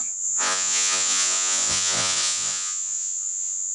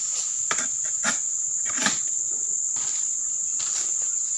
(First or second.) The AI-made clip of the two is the first